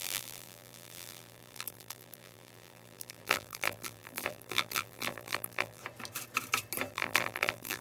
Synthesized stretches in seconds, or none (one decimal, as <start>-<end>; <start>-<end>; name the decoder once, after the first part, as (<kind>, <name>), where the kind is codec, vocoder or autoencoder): 0.0-5.8 (vocoder, BigVGAN v2); 6.9-7.8